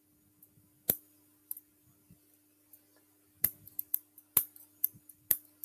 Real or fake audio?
real